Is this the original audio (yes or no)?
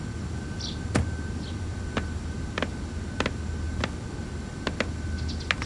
yes